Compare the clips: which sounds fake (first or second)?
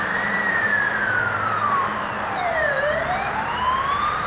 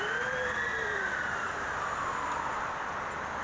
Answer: first